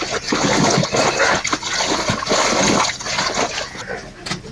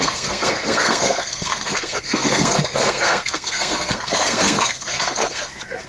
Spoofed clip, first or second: second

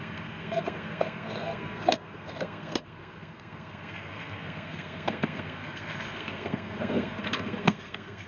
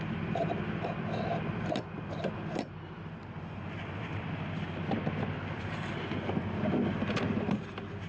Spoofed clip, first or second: first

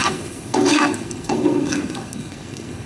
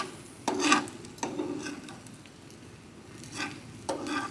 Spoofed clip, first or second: first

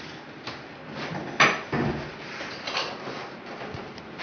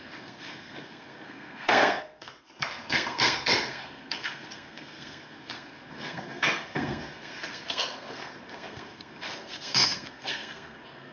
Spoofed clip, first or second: second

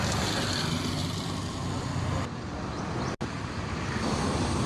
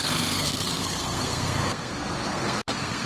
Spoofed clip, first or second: second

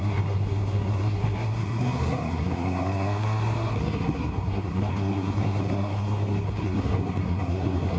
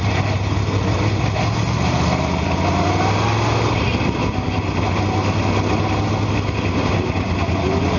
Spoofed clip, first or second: first